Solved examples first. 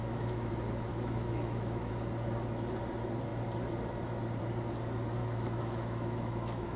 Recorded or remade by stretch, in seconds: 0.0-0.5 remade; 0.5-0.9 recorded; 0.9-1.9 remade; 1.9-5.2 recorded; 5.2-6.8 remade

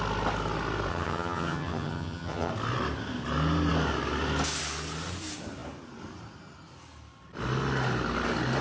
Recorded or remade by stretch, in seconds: 0.0-0.9 recorded; 0.9-2.5 remade; 2.5-8.6 recorded

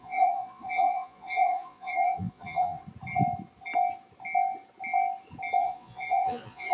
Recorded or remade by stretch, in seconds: 0.0-2.8 remade; 2.8-5.6 recorded; 5.6-6.7 remade

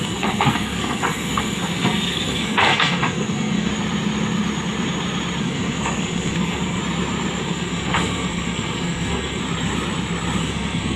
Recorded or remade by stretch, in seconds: 0.0-3.7 remade; 3.7-5.4 recorded; 5.4-6.8 remade; 6.8-7.4 recorded; 7.4-9.4 remade; 9.4-10.4 recorded; 10.4-11.0 remade

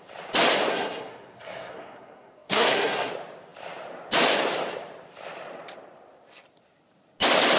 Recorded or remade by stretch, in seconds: 0.0-0.7 recorded; 0.7-3.1 remade; 3.1-7.6 recorded

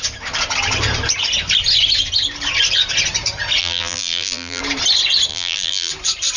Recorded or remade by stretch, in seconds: 0.0-3.6 recorded; 3.6-4.6 remade; 4.6-5.3 recorded; 5.3-5.9 remade; 5.9-6.4 recorded

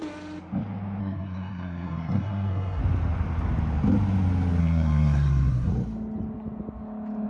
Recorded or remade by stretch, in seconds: 0.0-1.0 recorded; 1.0-2.8 remade; 2.8-4.6 recorded; 4.6-5.7 remade; 5.7-7.3 recorded

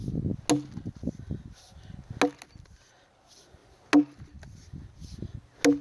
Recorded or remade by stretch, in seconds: 0.0-5.8 recorded